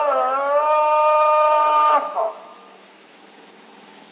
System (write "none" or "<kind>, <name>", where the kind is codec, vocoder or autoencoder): autoencoder, DAC-VAE